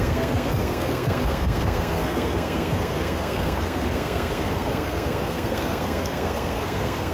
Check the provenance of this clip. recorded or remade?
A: remade